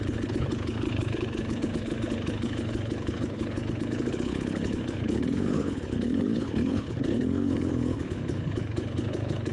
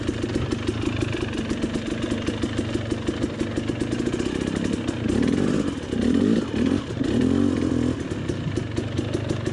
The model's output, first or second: first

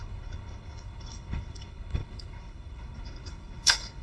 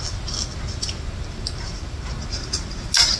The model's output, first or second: first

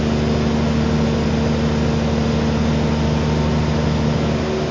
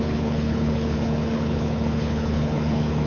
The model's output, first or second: second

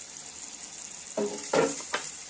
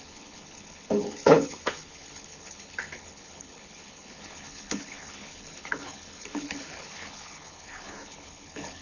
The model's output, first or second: second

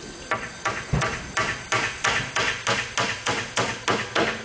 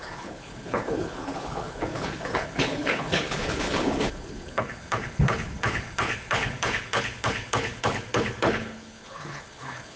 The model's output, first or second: second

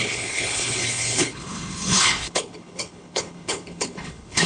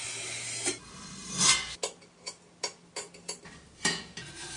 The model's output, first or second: first